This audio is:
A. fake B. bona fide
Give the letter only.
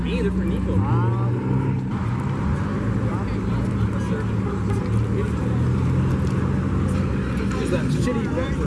B